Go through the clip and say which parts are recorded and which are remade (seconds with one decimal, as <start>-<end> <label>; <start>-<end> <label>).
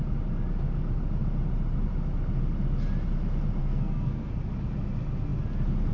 0.0-3.6 recorded; 3.6-4.3 remade; 4.3-5.9 recorded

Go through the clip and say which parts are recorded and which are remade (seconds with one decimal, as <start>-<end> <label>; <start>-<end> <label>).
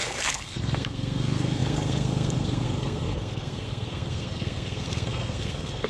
0.0-5.9 remade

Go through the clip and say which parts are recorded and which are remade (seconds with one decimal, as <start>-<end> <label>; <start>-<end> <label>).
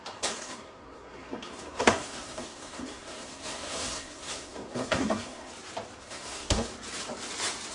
0.0-5.5 remade; 5.5-6.0 recorded; 6.0-6.7 remade; 6.7-7.7 recorded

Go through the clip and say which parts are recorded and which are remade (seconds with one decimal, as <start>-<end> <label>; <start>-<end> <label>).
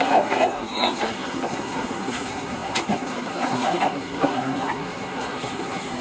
0.0-6.0 remade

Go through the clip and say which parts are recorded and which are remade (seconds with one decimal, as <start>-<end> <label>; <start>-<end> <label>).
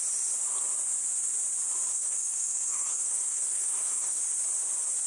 0.0-1.9 recorded; 1.9-4.2 remade; 4.2-5.1 recorded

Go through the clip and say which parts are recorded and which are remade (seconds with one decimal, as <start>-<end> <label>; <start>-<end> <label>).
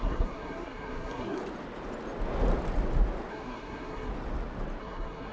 0.0-1.4 remade; 1.4-3.3 recorded; 3.3-4.1 remade; 4.1-4.8 recorded; 4.8-5.3 remade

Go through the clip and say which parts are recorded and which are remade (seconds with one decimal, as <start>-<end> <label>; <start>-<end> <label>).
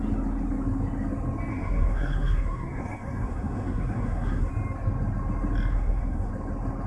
0.0-1.5 recorded; 1.5-4.5 remade; 4.5-5.7 recorded; 5.7-6.3 remade; 6.3-6.9 recorded